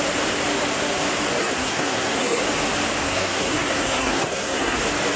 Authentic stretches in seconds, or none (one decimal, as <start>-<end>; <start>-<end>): 0.0-1.4; 2.4-3.0; 4.8-5.2